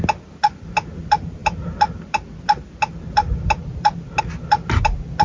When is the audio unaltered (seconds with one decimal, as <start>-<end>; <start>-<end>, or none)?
0.0-5.2